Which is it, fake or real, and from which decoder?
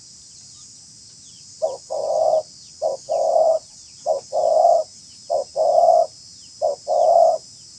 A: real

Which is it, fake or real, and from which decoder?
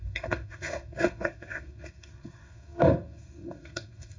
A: fake, codec, SNAC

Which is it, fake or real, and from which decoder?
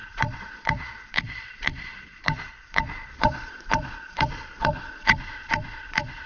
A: fake, vocoder, Vocos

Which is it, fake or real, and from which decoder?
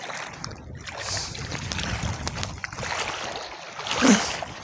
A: real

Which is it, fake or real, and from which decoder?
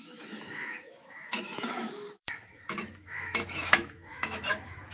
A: fake, autoencoder, DAC-VAE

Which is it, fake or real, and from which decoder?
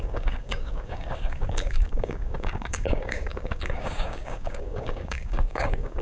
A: fake, codec, DAC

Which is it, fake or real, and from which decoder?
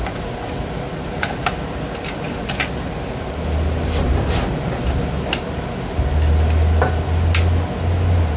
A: real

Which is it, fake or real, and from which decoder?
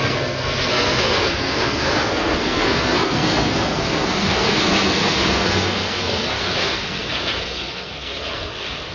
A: fake, codec, SNAC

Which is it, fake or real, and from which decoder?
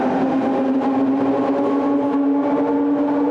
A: real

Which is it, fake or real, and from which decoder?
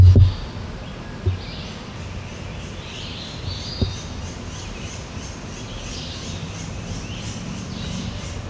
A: real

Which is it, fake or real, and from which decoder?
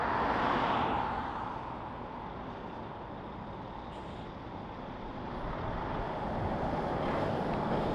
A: real